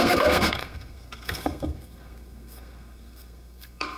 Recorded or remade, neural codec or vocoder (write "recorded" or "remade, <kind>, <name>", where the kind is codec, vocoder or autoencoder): remade, codec, SNAC